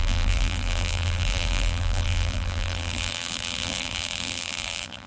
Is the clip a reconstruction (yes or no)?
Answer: yes